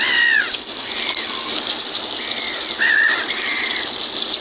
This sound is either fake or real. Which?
real